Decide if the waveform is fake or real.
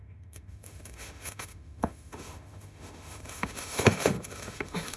fake